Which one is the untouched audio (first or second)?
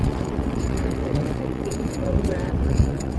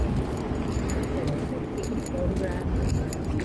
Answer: second